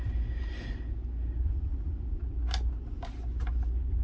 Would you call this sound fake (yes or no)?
no